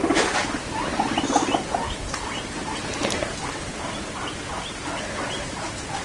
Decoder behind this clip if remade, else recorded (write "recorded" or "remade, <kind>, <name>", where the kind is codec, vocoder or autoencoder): recorded